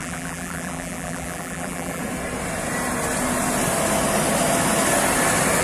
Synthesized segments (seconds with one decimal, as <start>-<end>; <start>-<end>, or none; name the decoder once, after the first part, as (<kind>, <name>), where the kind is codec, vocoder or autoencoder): 0.0-2.0 (vocoder, BigVGAN v2)